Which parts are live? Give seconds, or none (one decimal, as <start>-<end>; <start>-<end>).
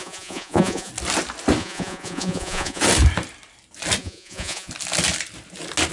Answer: 0.9-1.6; 2.8-4.0; 4.7-5.9